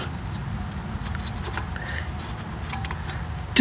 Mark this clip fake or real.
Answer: real